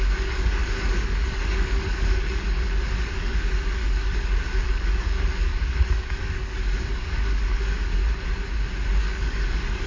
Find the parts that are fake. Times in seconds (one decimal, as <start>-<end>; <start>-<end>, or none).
0.0-8.0; 9.0-9.9